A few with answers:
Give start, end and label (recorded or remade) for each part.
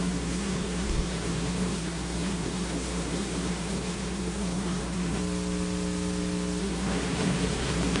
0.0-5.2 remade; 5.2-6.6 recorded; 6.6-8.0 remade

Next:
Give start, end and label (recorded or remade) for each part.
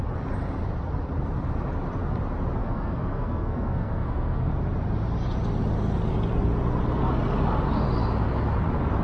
0.0-2.6 recorded; 2.6-4.5 remade; 4.5-9.0 recorded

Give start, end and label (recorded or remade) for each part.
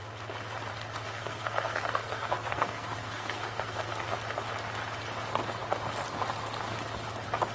0.0-1.2 recorded; 1.2-4.1 remade; 4.1-7.5 recorded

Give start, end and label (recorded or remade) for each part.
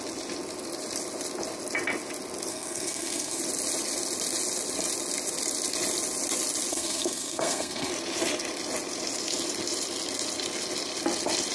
0.0-2.5 recorded; 2.5-3.4 remade; 3.4-6.7 recorded; 6.7-7.9 remade; 7.9-11.5 recorded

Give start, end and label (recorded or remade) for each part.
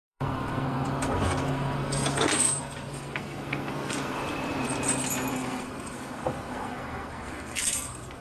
0.0-4.2 remade; 4.2-5.3 recorded; 5.3-8.2 remade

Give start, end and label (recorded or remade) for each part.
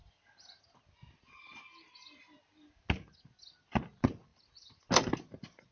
0.0-5.7 recorded